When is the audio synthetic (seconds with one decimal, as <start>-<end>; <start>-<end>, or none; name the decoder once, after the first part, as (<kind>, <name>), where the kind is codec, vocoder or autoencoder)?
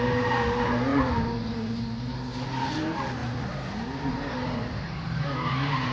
3.2-5.2 (vocoder, BigVGAN v2)